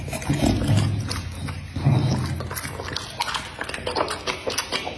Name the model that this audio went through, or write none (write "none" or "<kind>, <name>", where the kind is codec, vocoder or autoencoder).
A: none